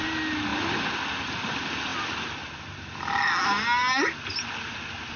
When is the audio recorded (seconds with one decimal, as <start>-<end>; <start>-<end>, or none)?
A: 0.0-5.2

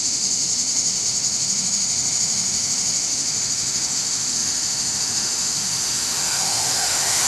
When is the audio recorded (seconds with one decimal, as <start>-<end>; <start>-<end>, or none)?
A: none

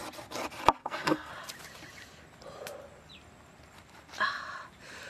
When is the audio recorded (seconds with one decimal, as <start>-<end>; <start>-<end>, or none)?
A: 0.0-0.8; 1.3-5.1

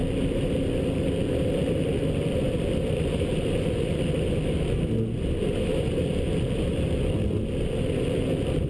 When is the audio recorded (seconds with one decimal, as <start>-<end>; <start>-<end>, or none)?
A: 0.0-8.7

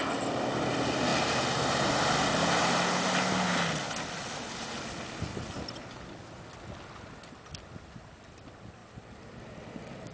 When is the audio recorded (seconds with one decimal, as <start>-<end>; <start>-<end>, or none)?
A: 0.0-10.1

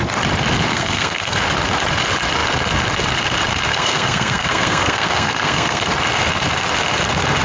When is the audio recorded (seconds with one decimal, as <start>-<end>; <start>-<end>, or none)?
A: 0.0-0.7; 1.4-3.7; 5.8-7.4

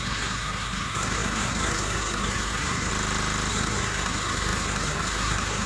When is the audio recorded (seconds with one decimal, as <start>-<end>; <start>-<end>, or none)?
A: 2.9-3.5

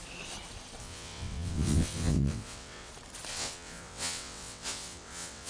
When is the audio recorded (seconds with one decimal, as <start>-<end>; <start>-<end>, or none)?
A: 0.0-0.8; 2.9-3.3